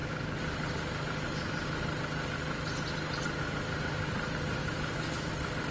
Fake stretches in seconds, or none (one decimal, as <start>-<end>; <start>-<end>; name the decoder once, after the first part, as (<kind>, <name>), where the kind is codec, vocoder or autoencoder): 4.6-5.3 (autoencoder, DAC-VAE)

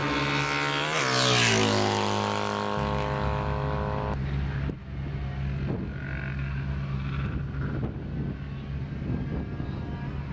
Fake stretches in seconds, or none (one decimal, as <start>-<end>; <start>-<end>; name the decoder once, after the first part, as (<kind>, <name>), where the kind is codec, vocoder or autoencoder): none

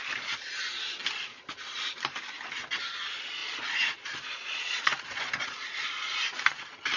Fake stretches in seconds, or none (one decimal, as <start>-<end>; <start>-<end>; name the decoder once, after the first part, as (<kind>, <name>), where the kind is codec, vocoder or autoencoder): 1.3-1.8 (vocoder, Vocos); 3.4-6.2

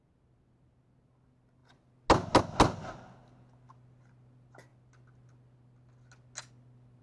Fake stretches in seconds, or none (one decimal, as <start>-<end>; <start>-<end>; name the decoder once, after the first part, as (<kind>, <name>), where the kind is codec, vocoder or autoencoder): none

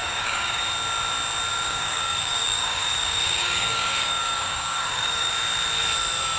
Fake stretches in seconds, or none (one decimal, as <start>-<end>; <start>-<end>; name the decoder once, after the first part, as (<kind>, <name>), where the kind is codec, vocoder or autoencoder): 0.0-0.6 (codec, DAC); 1.5-5.3